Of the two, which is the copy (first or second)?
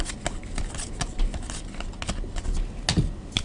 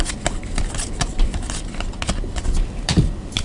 second